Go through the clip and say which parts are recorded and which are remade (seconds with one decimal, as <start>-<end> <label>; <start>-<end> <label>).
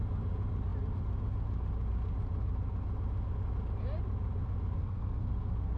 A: 0.0-4.8 recorded; 4.8-5.8 remade